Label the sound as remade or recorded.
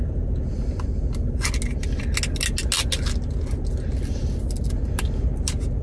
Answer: recorded